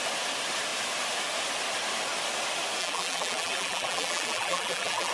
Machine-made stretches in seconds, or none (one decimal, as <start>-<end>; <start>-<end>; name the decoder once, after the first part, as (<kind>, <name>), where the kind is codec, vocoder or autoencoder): 2.8-5.1 (vocoder, BigVGAN v2)

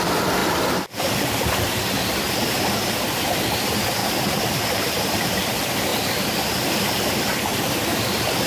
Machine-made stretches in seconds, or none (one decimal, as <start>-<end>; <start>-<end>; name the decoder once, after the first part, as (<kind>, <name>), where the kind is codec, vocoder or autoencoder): 0.0-4.0 (vocoder, BigVGAN v2); 5.0-7.5

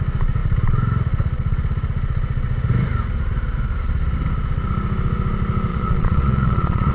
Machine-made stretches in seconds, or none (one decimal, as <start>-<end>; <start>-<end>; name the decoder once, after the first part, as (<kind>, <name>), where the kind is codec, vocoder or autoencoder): 5.7-6.9 (vocoder, Vocos)

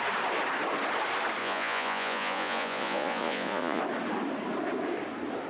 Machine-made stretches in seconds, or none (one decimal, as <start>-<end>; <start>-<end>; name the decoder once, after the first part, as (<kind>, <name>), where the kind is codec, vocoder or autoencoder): 1.4-3.8 (vocoder, Vocos)

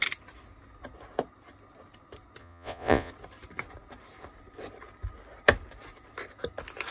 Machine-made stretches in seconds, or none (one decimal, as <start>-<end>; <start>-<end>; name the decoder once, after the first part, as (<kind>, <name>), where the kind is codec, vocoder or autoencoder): 2.4-3.1 (vocoder, Vocos)

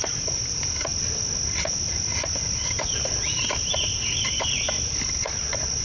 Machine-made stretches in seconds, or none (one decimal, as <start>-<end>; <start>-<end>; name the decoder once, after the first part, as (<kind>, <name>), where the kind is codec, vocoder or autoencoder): none

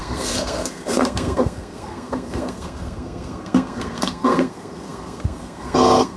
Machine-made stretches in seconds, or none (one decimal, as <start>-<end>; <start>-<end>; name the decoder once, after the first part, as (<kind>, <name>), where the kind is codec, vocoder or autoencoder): 0.0-6.2 (codec, SNAC)

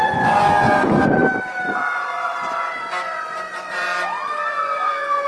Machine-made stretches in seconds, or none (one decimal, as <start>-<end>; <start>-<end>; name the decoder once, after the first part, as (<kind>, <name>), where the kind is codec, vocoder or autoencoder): 0.0-1.2 (vocoder, Vocos); 1.7-3.9; 4.5-5.3